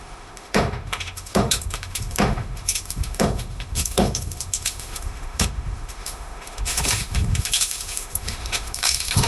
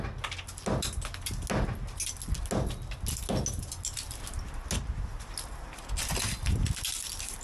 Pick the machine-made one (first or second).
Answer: first